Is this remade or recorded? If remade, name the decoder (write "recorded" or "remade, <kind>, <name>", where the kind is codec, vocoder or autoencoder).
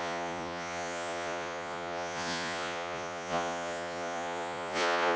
remade, vocoder, Vocos